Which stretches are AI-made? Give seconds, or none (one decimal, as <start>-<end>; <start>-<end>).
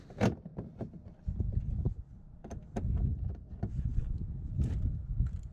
none